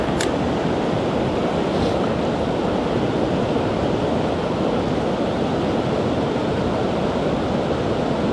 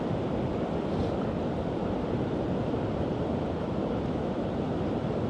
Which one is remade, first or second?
second